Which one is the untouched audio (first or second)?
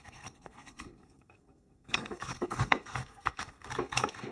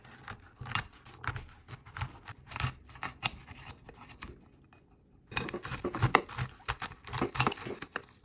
second